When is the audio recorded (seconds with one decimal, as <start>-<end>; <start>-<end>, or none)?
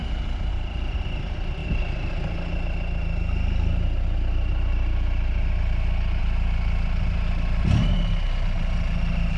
0.0-9.4